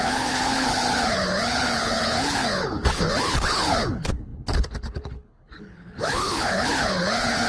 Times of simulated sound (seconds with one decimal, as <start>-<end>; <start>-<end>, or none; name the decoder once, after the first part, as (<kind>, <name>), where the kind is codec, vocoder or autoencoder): 0.0-7.5 (codec, HILCodec)